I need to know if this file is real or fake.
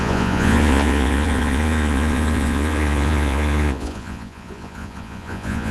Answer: fake